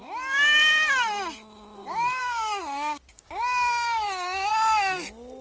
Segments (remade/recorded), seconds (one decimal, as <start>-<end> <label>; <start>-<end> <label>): 0.0-2.2 recorded; 2.2-4.5 remade; 4.5-5.4 recorded